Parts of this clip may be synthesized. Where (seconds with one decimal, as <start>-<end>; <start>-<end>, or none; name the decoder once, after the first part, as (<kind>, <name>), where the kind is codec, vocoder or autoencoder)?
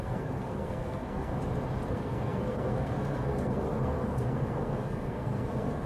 0.0-1.3 (codec, SNAC); 1.9-5.9